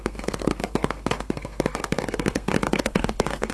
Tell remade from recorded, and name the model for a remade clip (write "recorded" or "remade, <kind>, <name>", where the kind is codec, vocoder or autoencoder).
remade, codec, SNAC